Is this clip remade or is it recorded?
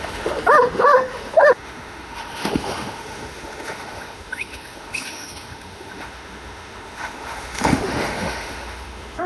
remade